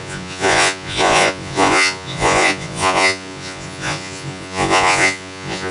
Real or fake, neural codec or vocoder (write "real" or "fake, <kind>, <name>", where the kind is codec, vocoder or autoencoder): fake, vocoder, Vocos